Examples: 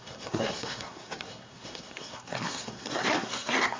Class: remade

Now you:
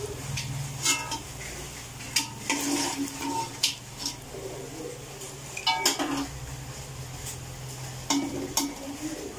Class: recorded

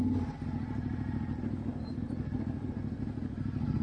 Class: recorded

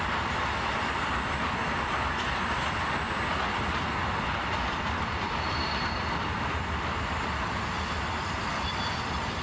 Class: recorded